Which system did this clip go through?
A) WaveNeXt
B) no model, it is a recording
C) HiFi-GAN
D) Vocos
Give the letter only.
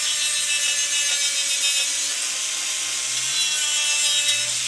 B